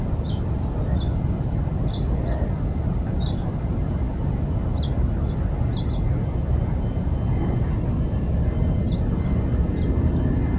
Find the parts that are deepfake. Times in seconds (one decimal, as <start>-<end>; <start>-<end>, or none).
1.7-3.2